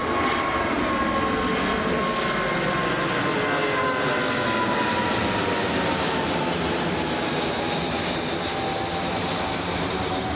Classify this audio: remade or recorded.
recorded